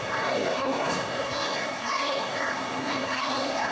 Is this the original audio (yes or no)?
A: no